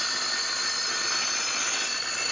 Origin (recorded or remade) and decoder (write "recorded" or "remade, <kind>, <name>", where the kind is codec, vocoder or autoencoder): remade, vocoder, BigVGAN v2